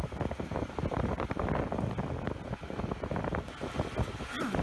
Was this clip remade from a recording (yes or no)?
no